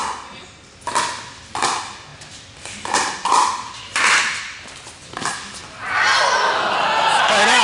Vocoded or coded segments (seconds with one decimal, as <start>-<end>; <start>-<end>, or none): none